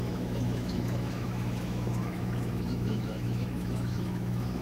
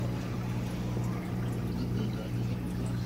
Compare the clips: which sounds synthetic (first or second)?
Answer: first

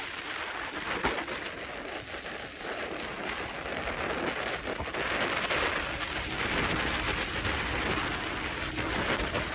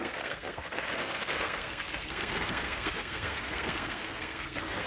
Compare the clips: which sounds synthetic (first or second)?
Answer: second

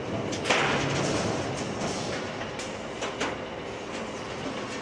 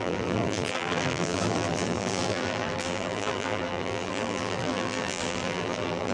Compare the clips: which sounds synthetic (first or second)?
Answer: second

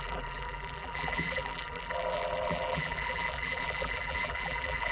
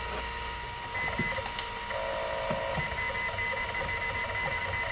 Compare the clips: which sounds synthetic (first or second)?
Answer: first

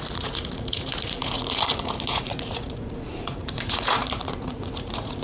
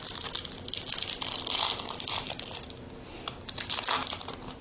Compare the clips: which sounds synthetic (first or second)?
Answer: first